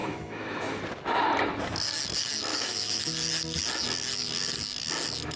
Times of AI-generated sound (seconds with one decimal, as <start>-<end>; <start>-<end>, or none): 0.0-0.8; 2.5-3.0